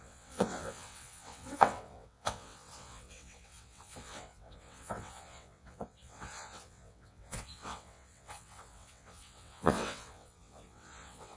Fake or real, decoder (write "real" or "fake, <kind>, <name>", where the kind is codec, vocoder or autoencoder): fake, vocoder, WaveNeXt